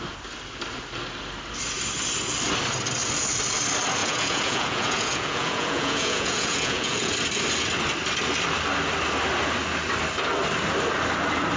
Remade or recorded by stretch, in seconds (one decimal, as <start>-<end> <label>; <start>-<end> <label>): 0.0-4.0 recorded; 4.0-7.1 remade; 7.1-11.6 recorded